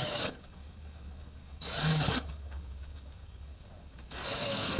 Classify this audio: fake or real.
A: fake